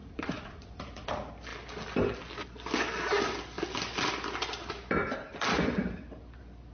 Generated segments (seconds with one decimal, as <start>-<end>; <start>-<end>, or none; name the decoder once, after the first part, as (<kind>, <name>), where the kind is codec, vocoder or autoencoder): 0.0-1.1 (vocoder, Vocos)